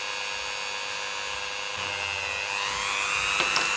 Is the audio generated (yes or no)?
no